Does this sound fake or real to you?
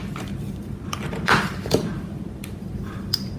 fake